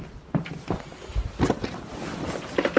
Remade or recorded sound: recorded